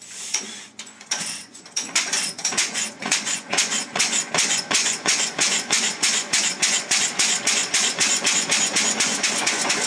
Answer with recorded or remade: remade